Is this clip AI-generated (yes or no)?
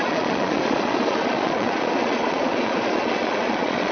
yes